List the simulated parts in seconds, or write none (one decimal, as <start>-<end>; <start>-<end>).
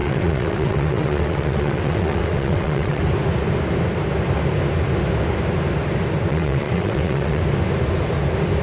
0.0-3.0; 6.3-7.4